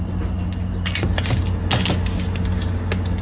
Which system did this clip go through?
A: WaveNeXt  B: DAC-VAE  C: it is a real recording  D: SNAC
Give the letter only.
C